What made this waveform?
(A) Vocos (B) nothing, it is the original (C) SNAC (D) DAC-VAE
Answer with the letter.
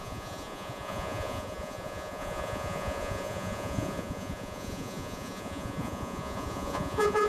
A